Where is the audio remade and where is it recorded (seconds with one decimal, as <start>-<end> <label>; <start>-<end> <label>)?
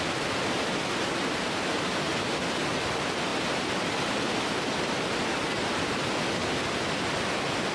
0.0-7.7 recorded